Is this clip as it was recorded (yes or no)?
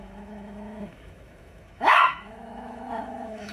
no